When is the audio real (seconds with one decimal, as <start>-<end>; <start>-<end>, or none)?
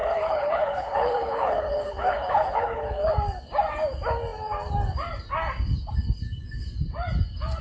3.1-7.6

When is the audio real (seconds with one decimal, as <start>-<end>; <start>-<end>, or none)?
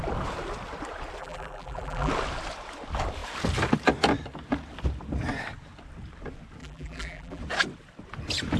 0.0-1.2; 2.1-6.6; 7.4-8.6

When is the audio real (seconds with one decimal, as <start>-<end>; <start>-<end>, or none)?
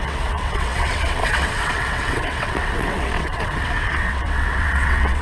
none